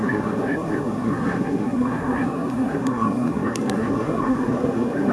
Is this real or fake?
fake